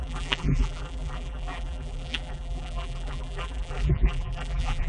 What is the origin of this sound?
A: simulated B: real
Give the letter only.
A